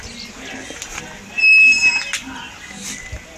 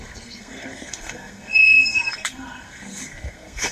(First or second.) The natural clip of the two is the first